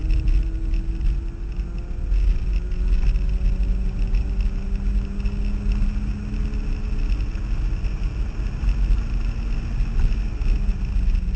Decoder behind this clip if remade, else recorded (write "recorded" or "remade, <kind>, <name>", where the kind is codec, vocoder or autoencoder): recorded